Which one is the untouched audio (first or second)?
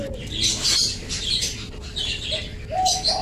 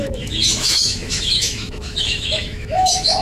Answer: first